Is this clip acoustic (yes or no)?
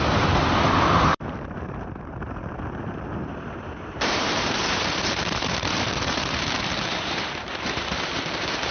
no